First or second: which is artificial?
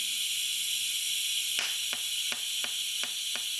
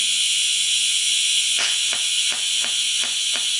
second